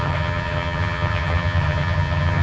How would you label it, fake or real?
fake